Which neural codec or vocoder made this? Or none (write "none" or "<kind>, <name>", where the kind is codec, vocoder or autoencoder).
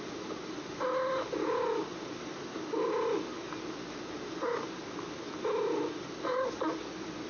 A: none